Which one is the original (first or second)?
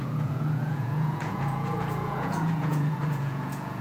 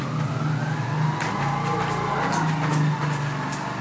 second